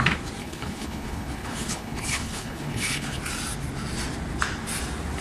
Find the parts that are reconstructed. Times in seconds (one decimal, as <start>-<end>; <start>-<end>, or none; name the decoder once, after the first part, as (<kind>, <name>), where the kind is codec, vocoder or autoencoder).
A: 0.4-3.2 (codec, HILCodec)